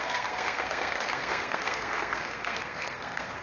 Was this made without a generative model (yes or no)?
no